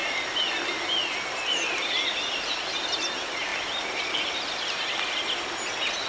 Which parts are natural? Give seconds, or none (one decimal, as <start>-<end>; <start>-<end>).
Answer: 0.0-6.1